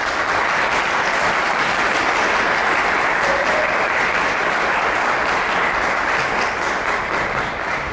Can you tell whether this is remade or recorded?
recorded